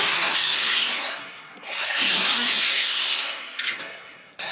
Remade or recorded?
remade